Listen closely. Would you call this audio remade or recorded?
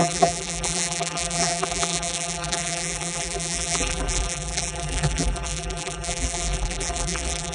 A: remade